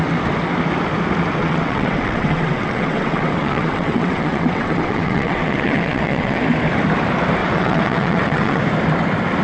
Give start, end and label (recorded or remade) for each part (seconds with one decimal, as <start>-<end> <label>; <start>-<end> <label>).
0.0-1.4 recorded; 1.4-6.4 remade; 6.4-7.4 recorded; 7.4-8.6 remade; 8.6-9.4 recorded